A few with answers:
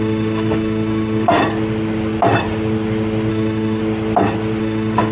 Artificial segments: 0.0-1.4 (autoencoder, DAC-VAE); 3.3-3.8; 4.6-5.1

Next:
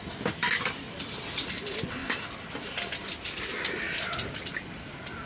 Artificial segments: none